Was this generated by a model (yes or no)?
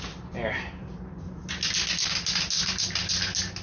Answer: no